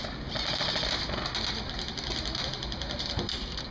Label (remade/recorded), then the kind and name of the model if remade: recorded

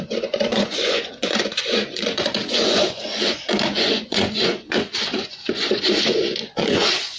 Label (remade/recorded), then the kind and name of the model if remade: remade, vocoder, Vocos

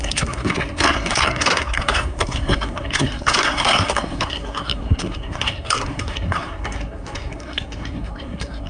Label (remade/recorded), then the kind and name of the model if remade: remade, codec, SNAC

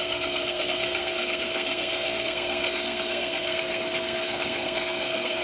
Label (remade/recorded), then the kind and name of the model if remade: remade, codec, SNAC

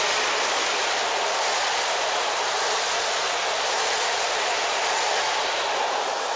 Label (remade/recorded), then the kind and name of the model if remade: recorded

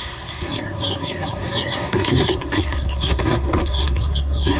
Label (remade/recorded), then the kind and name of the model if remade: remade, codec, SNAC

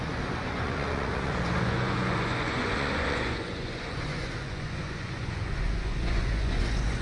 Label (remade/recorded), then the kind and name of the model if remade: remade, vocoder, Vocos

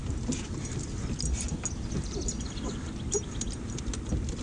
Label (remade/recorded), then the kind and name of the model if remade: recorded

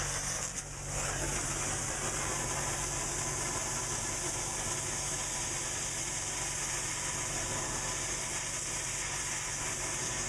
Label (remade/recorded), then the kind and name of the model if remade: recorded